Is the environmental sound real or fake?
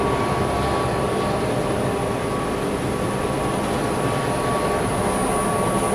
real